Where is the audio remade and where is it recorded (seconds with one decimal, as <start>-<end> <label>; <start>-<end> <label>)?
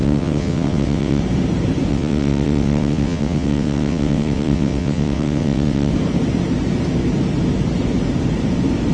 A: 0.0-1.2 remade; 1.2-1.9 recorded; 1.9-5.9 remade; 5.9-8.9 recorded